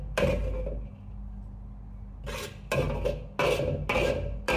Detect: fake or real real